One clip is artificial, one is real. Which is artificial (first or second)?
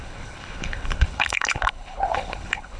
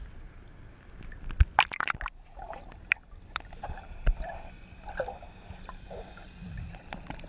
first